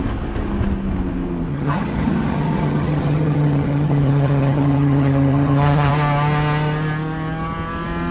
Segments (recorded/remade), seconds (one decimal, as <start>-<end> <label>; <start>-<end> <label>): 0.0-1.5 recorded; 1.5-5.9 remade; 5.9-8.1 recorded